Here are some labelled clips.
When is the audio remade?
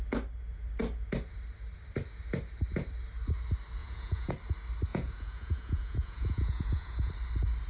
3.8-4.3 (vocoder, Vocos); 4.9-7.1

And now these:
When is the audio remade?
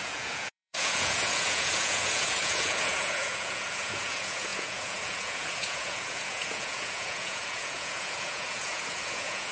0.0-9.5 (vocoder, Vocos)